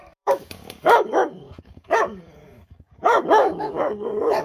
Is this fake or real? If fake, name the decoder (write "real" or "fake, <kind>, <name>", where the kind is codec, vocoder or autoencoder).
fake, codec, DAC